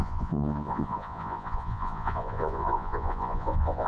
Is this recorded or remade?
remade